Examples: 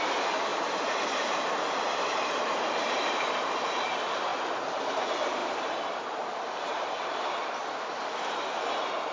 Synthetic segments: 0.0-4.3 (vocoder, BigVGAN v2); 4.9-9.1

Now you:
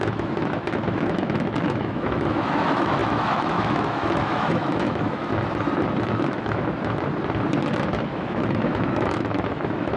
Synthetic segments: 0.0-5.3 (autoencoder, DAC-VAE); 6.0-6.6; 8.1-10.0

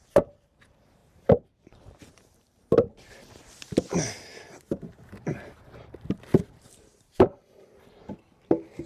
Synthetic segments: 0.0-8.9 (vocoder, BigVGAN v2)

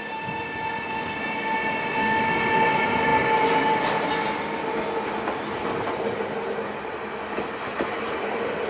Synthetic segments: none